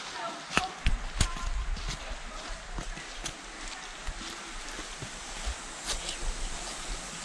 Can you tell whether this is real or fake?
real